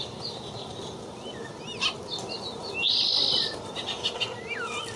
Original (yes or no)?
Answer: yes